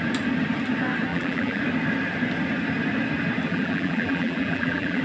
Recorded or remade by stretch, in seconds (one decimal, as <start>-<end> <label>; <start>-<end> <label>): 0.0-1.1 recorded; 1.1-1.6 remade; 1.6-3.5 recorded; 3.5-5.0 remade